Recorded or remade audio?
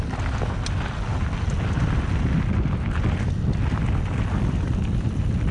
recorded